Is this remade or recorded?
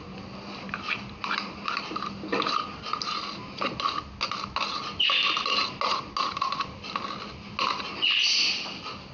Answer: recorded